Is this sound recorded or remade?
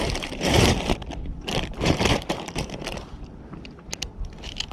remade